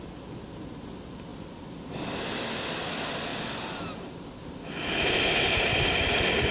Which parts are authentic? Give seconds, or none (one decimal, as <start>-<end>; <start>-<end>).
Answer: 0.0-1.3; 2.2-3.3; 5.9-6.5